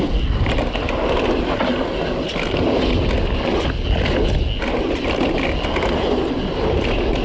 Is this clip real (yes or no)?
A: yes